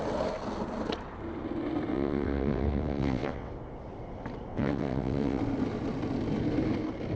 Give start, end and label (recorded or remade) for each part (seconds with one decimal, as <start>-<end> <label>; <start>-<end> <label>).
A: 0.0-1.9 recorded; 1.9-3.5 remade; 3.5-4.5 recorded; 4.5-5.4 remade; 5.4-7.2 recorded

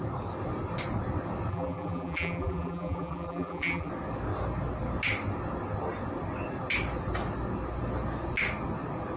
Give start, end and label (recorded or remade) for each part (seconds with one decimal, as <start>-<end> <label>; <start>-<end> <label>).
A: 0.0-1.5 recorded; 1.5-3.9 remade; 3.9-9.2 recorded

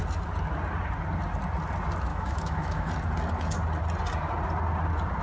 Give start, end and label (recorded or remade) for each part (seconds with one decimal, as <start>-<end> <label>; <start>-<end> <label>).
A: 0.0-2.1 recorded; 2.1-2.9 remade; 2.9-5.2 recorded

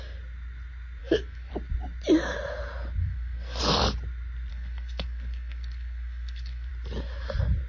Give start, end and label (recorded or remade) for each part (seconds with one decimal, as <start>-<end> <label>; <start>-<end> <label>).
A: 0.0-1.0 recorded; 1.0-1.5 remade; 1.5-3.0 recorded; 3.0-3.6 remade; 3.6-4.5 recorded; 4.5-6.7 remade; 6.7-7.7 recorded

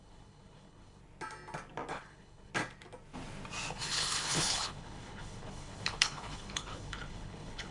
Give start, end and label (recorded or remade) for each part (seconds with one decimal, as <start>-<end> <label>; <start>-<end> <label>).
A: 0.0-1.0 remade; 1.0-1.9 recorded; 1.9-2.5 remade; 2.5-3.7 recorded; 3.7-7.7 remade